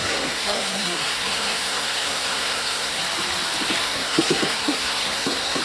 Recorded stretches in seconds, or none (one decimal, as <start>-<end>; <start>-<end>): 3.0-3.8